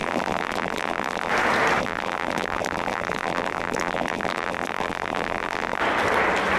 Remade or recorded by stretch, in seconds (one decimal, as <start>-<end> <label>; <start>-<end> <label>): 0.0-1.3 remade; 1.3-1.8 recorded; 1.8-5.8 remade; 5.8-6.6 recorded